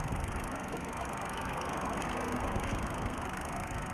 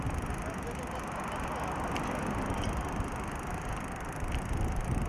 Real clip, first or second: second